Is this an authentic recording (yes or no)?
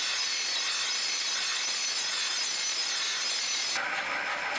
yes